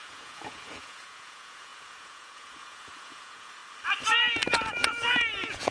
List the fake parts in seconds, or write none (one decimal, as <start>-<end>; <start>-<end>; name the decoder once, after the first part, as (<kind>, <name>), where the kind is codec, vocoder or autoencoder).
0.0-3.6 (vocoder, Vocos); 4.5-5.7